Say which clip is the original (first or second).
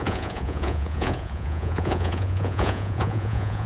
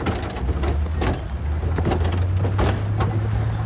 second